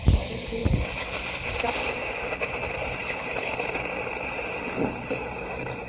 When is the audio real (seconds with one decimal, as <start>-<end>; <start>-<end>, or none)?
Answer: 0.0-3.0; 3.6-5.9